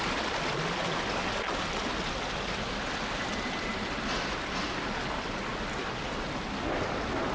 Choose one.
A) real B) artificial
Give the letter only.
A